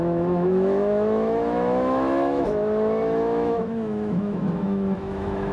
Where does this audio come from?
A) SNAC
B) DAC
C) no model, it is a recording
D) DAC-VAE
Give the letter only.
D